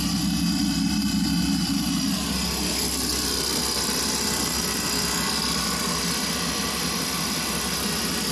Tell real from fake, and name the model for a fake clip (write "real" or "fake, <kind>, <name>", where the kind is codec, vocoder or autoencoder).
real